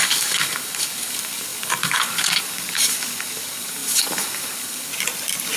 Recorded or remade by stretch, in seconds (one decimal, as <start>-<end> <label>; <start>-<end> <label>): 0.0-4.9 remade; 4.9-5.6 recorded